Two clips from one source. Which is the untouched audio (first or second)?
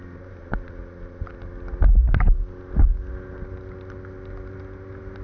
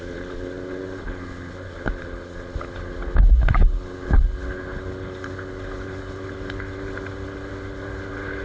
first